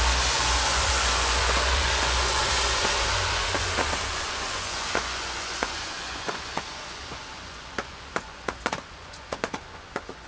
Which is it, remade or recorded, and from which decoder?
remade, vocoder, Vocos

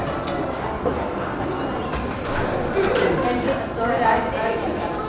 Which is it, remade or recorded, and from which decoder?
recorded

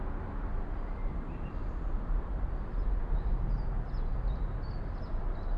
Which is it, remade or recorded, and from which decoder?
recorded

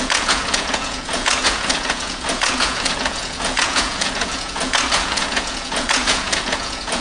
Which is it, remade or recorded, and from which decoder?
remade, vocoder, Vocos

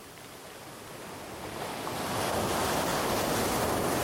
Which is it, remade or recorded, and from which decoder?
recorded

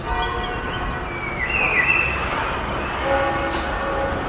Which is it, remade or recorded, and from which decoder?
recorded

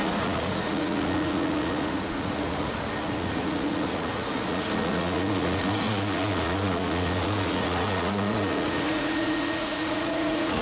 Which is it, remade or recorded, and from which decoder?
remade, vocoder, Vocos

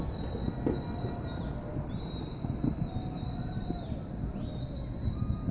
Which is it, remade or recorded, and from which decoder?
recorded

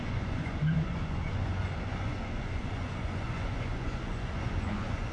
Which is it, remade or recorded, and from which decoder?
remade, vocoder, Vocos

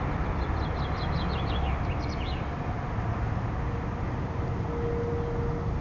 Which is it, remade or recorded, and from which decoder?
recorded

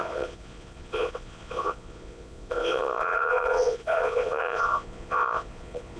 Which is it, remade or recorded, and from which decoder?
remade, vocoder, Vocos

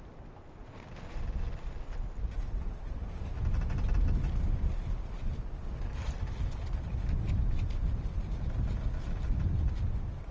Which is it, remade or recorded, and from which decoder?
recorded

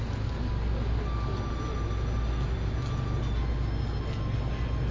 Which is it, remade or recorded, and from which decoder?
recorded